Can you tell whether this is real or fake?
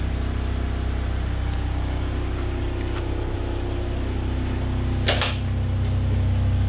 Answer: real